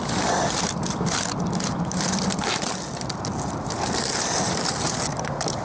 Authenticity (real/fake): fake